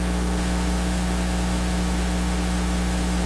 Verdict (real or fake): fake